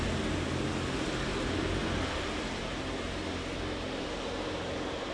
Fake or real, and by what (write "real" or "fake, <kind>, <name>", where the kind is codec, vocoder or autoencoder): real